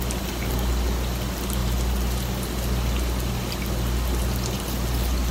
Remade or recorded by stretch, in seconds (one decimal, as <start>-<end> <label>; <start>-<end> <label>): 0.0-5.3 recorded